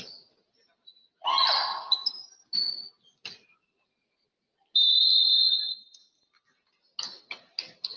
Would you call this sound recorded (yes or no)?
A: yes